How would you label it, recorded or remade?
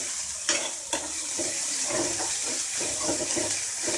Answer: recorded